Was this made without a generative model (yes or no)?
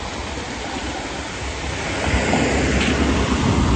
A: yes